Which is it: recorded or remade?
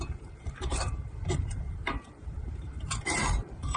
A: remade